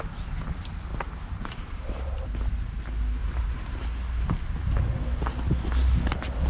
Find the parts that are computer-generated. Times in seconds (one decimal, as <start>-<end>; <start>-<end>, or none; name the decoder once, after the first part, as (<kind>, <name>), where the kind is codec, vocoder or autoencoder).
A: 0.9-2.5 (vocoder, BigVGAN v2); 3.2-3.8